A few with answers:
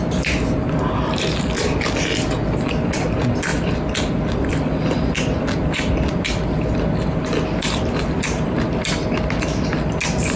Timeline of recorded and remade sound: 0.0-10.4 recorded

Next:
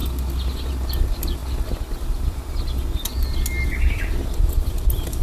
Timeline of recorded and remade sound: 0.0-5.2 recorded

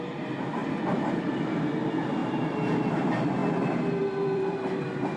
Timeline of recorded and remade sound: 0.0-0.6 remade; 0.6-1.1 recorded; 1.1-2.2 remade; 2.2-2.9 recorded; 2.9-3.4 remade; 3.4-4.0 recorded; 4.0-5.2 remade

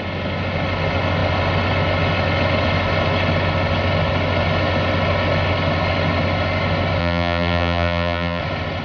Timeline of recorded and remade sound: 0.0-7.0 recorded; 7.0-8.4 remade; 8.4-8.8 recorded

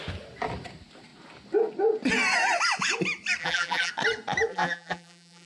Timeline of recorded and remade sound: 0.0-3.4 recorded; 3.4-3.9 remade; 3.9-4.5 recorded; 4.5-5.5 remade